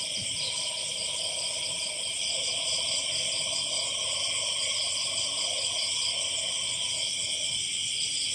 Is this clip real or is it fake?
real